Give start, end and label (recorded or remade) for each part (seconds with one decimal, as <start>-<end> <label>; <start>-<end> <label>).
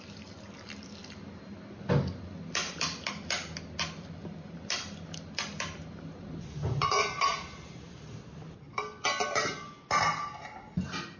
0.0-11.2 recorded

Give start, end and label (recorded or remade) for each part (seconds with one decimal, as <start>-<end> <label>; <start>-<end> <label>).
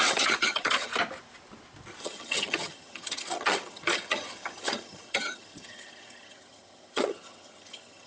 0.0-0.9 remade; 0.9-2.0 recorded; 2.0-8.1 remade